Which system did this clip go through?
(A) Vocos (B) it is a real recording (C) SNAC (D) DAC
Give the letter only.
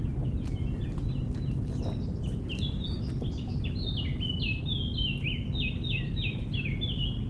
B